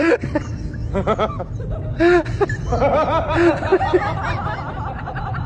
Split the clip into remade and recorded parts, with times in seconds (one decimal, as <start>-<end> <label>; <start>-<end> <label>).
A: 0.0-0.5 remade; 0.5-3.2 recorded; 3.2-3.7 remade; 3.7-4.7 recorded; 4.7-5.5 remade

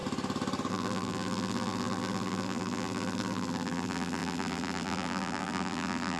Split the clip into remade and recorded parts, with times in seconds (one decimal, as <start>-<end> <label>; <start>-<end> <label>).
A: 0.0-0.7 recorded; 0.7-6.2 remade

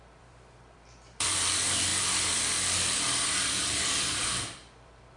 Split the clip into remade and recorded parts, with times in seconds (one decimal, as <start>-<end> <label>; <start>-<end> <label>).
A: 0.0-5.2 remade